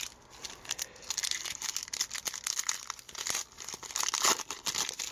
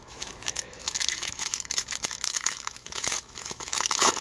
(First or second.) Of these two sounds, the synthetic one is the second